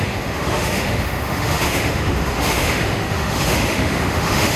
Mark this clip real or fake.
fake